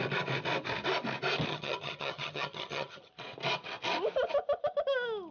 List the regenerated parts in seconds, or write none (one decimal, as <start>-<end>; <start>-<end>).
1.5-3.1

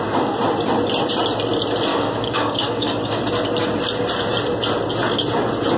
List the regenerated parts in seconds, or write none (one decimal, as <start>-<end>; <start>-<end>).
1.9-3.2

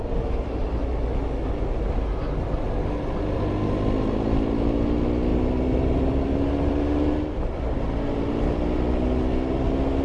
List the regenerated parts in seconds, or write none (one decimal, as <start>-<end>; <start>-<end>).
none